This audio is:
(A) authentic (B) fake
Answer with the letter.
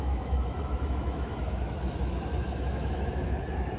B